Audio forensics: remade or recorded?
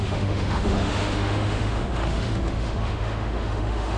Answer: remade